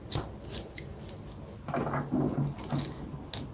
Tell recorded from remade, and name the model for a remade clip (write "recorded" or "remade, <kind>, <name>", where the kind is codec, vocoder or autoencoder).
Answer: recorded